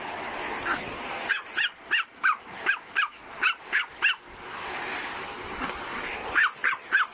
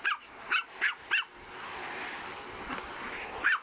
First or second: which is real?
second